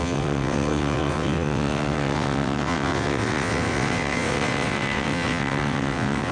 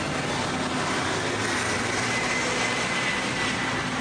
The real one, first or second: second